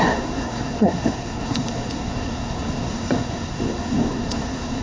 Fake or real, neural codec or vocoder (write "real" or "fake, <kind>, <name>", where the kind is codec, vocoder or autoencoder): fake, codec, SNAC